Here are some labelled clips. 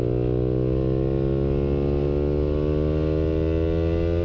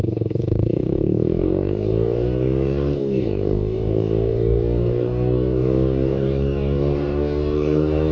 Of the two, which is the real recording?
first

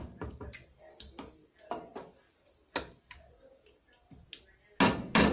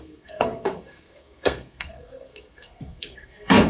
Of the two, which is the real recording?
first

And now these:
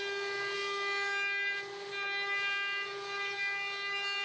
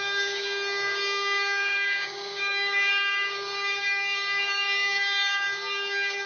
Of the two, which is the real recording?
first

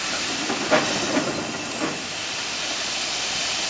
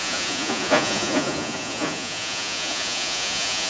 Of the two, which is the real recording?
first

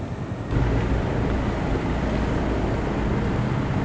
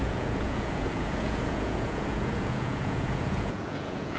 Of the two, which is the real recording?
first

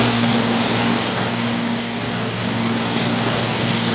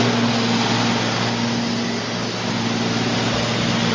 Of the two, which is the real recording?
second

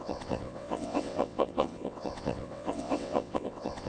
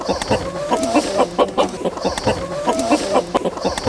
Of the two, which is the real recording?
second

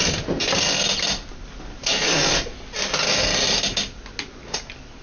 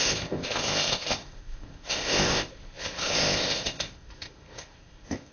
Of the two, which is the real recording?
first